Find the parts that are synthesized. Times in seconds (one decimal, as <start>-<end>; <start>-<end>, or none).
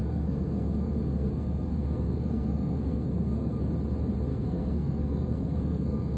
0.0-3.7; 4.3-6.2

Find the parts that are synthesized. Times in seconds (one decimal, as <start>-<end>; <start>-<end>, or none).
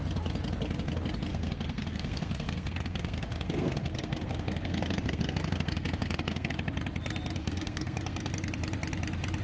1.3-6.5; 7.4-8.3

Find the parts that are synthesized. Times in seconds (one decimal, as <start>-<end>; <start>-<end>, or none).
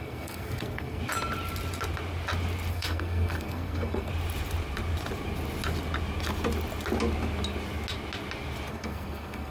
0.0-1.0; 2.7-4.1; 8.7-9.5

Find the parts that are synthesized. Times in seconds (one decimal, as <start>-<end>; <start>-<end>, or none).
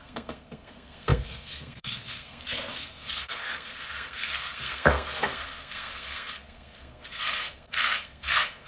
0.0-8.7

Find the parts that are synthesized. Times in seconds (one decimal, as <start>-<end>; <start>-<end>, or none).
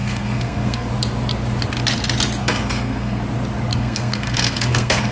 0.0-0.9; 2.4-3.2; 3.7-5.1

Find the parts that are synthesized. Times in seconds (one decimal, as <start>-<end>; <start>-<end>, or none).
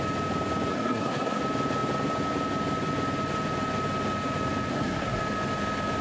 0.7-1.4; 4.7-5.2